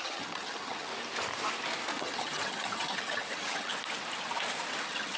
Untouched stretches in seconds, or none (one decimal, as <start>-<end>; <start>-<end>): 0.9-2.0; 3.7-4.8